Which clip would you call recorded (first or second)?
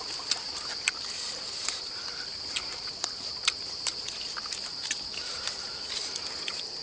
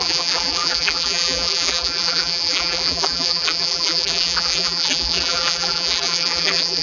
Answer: first